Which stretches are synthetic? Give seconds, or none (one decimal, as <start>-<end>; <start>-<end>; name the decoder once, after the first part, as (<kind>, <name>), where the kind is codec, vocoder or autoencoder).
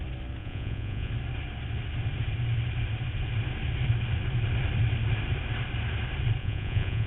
0.4-1.1 (vocoder, Vocos); 6.4-7.1